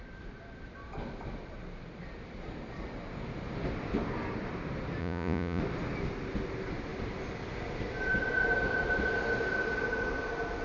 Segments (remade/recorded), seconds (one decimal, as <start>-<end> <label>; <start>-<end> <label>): 0.0-5.0 recorded; 5.0-5.6 remade; 5.6-10.6 recorded